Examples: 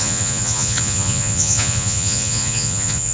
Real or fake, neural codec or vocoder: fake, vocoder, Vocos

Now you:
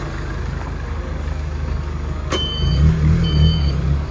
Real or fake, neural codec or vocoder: fake, codec, DAC